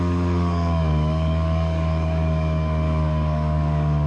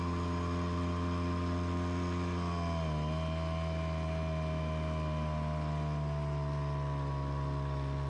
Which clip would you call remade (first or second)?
first